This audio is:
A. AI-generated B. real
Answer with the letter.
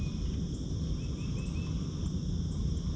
B